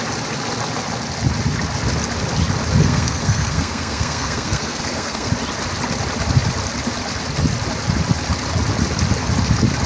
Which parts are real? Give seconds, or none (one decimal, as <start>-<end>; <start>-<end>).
0.0-2.8; 5.3-9.9

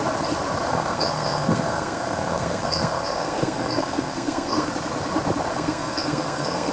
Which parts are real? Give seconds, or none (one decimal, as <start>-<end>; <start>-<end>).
0.0-0.7; 4.7-5.5